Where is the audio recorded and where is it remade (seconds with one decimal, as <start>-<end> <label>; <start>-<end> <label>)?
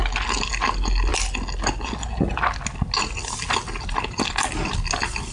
0.0-5.3 recorded